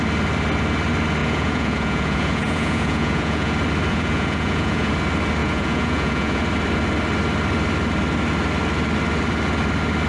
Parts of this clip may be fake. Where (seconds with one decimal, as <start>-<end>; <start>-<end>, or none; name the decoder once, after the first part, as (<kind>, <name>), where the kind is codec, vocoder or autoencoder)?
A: 1.2-3.5 (vocoder, Vocos); 3.9-4.9; 5.4-6.4